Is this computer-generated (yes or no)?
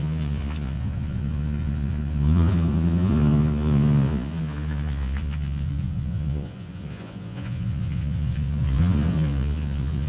yes